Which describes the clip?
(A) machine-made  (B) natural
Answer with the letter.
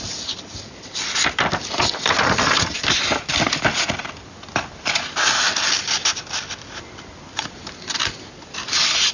B